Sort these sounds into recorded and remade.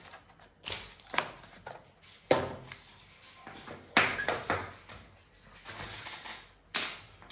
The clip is recorded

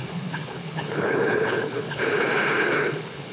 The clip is remade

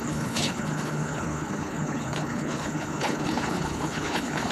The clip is remade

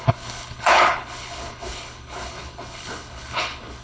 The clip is remade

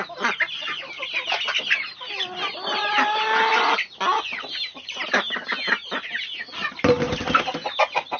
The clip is recorded